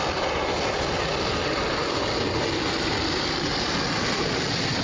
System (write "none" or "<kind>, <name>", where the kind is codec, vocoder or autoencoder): none